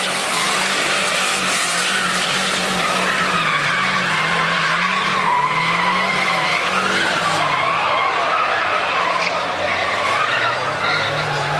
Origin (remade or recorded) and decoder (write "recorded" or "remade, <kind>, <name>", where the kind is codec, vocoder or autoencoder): recorded